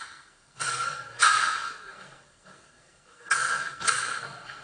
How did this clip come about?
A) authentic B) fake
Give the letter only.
B